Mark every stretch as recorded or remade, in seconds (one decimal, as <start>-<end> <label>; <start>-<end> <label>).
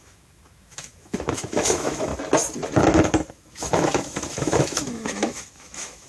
0.0-2.1 remade; 2.1-3.3 recorded; 3.3-6.1 remade